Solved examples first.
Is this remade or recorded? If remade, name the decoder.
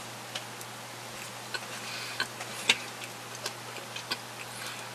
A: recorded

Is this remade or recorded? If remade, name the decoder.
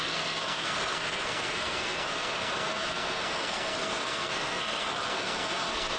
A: remade, codec, SNAC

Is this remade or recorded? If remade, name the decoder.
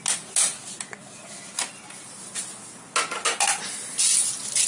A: recorded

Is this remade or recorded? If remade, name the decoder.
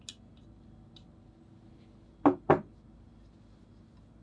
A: recorded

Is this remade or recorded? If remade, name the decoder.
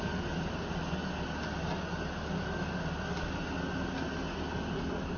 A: recorded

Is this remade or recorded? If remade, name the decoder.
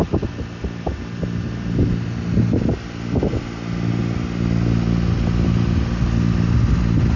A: recorded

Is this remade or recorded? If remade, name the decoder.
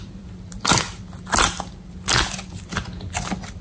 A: remade, vocoder, BigVGAN v2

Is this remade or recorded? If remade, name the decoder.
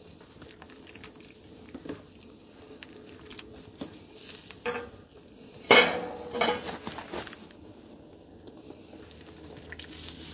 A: recorded